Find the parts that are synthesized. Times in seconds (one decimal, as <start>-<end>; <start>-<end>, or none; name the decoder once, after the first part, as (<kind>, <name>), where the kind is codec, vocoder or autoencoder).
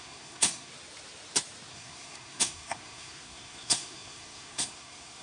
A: 0.0-0.7 (codec, SNAC); 1.7-5.2